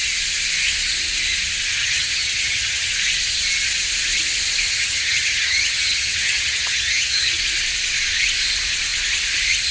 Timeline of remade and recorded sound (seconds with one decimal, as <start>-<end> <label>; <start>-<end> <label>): 0.0-1.8 recorded; 1.8-2.9 remade; 2.9-4.7 recorded; 4.7-7.4 remade; 7.4-9.7 recorded